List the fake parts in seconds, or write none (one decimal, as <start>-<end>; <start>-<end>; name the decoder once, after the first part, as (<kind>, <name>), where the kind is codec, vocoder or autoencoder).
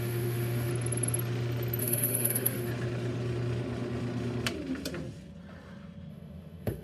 0.0-0.7 (autoencoder, DAC-VAE); 1.8-2.7; 6.1-6.8